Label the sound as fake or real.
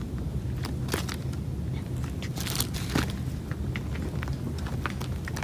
real